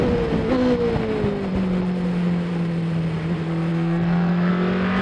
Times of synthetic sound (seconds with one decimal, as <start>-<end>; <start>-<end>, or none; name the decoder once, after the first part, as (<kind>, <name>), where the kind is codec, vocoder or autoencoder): 3.7-4.5 (codec, SNAC)